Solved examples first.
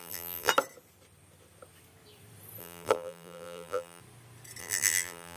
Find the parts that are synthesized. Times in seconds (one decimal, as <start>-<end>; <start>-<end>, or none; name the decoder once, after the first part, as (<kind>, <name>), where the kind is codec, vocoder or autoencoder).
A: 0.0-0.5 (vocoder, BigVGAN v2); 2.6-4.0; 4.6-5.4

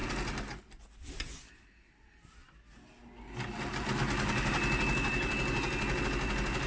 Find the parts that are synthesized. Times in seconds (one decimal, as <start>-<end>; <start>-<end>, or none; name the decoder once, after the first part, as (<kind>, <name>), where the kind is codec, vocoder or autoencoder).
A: none

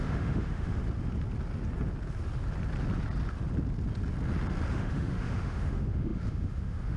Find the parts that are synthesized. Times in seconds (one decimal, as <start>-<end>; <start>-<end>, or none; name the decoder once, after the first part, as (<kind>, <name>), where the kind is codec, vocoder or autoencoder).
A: 0.0-0.8 (autoencoder, DAC-VAE); 4.7-7.0